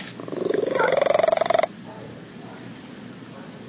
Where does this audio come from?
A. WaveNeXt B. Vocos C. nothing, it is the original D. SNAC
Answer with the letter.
C